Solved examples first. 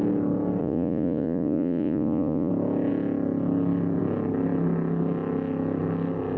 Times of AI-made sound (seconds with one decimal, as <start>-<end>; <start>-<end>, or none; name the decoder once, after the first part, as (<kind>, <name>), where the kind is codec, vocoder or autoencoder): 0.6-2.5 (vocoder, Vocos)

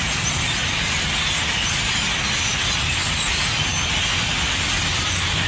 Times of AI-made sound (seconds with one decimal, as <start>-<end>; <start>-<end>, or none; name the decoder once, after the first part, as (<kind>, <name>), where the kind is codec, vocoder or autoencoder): none

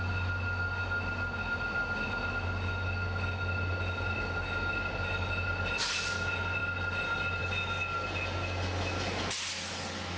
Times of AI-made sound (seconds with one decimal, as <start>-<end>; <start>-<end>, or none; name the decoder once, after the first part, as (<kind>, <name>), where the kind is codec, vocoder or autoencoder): none